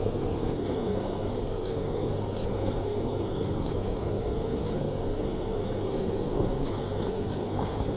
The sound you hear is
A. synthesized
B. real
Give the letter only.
A